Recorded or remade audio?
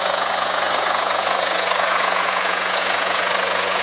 remade